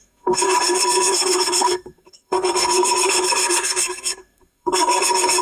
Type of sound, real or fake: fake